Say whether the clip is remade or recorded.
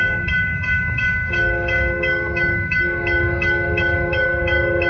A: remade